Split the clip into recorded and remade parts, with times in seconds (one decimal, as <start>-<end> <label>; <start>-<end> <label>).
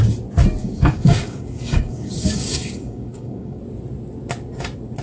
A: 0.0-0.6 recorded; 0.6-3.6 remade; 3.6-5.0 recorded